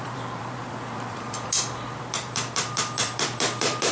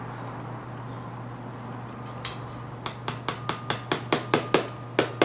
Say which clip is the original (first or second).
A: second